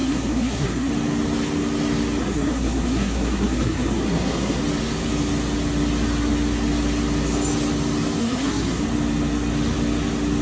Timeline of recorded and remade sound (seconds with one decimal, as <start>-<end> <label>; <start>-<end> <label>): 0.0-0.9 remade; 0.9-2.2 recorded; 2.2-4.6 remade; 4.6-8.2 recorded; 8.2-8.8 remade; 8.8-10.4 recorded